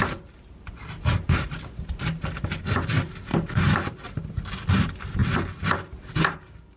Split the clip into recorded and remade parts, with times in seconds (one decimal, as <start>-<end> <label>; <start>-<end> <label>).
0.0-6.8 recorded